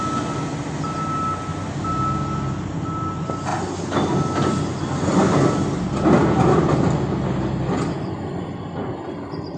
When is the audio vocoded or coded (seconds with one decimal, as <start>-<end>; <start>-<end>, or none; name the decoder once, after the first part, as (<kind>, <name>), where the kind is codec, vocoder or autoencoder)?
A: none

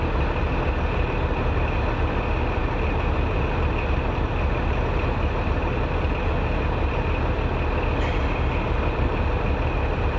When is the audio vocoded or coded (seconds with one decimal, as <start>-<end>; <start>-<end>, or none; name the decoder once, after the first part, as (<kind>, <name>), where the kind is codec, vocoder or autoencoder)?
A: none